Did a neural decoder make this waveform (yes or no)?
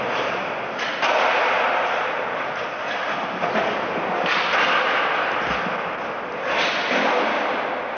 no